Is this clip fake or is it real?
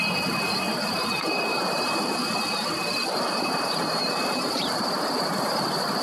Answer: fake